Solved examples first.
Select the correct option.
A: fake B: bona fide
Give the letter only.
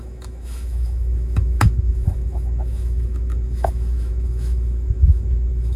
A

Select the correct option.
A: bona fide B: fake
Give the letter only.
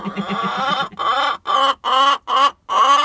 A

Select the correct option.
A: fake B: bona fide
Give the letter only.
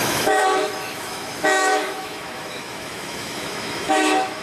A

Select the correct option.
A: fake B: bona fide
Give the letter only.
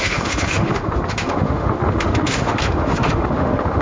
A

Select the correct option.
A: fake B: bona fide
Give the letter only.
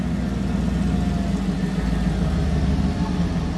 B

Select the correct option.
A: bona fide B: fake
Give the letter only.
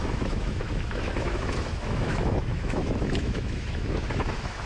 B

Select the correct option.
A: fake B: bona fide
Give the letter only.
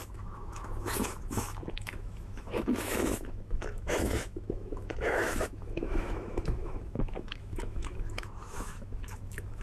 A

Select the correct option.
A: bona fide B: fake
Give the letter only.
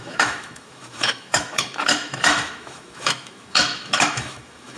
B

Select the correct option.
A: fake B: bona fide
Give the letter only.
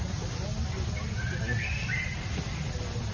B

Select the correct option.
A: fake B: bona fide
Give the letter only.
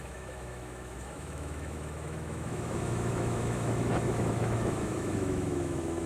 A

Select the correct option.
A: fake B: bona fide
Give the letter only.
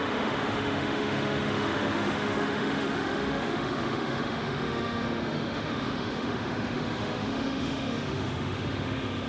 A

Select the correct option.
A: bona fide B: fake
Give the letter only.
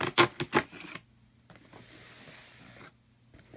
A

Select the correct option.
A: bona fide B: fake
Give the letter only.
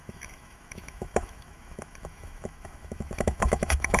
B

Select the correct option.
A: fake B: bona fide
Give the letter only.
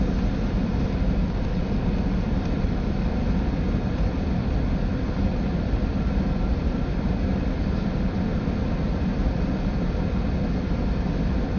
B